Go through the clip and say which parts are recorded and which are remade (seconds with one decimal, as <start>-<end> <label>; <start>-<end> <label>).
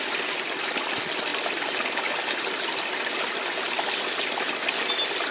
0.0-5.3 recorded